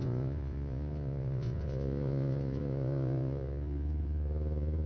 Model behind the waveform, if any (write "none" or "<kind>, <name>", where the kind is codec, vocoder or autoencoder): vocoder, Vocos